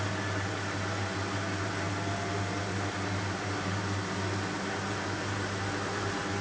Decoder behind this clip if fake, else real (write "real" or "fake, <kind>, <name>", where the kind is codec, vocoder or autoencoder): real